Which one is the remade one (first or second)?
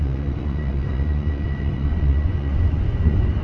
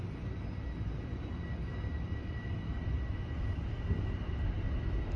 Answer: first